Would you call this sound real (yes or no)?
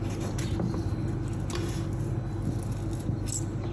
yes